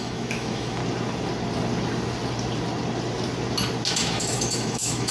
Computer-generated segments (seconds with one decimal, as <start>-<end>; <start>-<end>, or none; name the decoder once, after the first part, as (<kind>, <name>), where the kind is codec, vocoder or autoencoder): 0.0-0.8 (autoencoder, DAC-VAE); 3.9-5.1